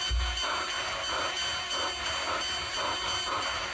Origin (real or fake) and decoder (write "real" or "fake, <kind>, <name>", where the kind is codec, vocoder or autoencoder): real